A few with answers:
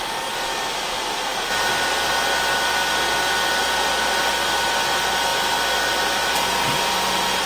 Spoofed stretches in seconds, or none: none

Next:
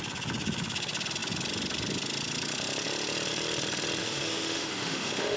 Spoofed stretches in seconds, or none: 4.0-5.4 (autoencoder, DAC-VAE)

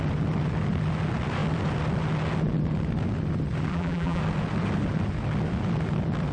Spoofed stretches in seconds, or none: 3.7-4.2 (vocoder, BigVGAN v2)

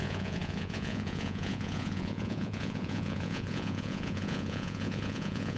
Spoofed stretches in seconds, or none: 0.0-5.6 (vocoder, Vocos)

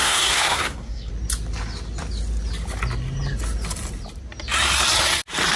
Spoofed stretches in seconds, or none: 0.0-1.1 (codec, SNAC)